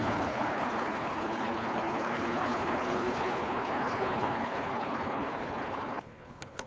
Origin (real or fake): fake